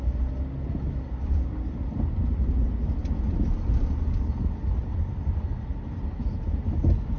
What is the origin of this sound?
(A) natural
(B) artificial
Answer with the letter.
A